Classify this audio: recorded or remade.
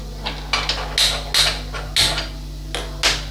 recorded